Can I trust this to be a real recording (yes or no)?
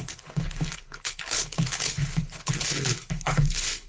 no